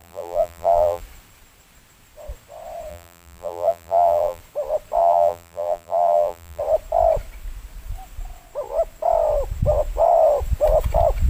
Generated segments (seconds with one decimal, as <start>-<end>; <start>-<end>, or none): 0.0-1.0; 2.9-4.4; 5.0-6.6